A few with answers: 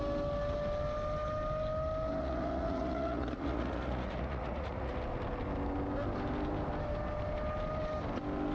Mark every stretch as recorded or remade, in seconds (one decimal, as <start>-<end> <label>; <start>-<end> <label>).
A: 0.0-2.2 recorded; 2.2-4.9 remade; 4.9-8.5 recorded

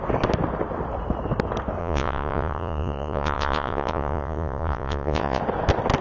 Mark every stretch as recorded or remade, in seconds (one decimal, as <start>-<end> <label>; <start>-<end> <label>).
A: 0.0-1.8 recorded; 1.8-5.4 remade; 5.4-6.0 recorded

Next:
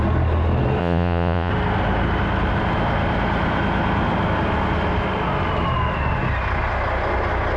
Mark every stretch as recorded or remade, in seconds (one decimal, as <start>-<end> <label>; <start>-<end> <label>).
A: 0.0-0.8 recorded; 0.8-1.5 remade; 1.5-7.6 recorded

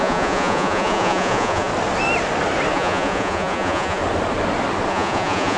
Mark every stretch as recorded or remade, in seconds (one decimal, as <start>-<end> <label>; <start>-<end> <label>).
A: 0.0-1.7 remade; 1.7-2.7 recorded; 2.7-4.0 remade; 4.0-4.9 recorded; 4.9-5.6 remade

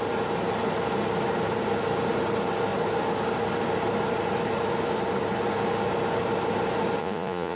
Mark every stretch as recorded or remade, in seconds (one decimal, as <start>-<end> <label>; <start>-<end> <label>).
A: 0.0-7.0 recorded; 7.0-7.6 remade

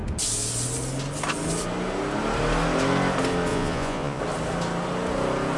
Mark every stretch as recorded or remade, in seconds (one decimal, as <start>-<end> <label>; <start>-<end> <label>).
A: 0.0-3.5 recorded; 3.5-4.2 remade; 4.2-5.6 recorded

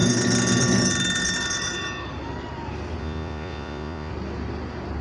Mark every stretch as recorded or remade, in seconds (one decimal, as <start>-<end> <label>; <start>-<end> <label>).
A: 0.0-3.0 recorded; 3.0-4.1 remade; 4.1-5.0 recorded